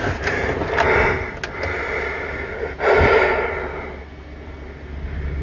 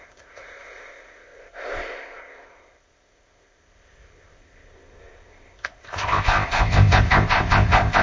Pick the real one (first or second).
first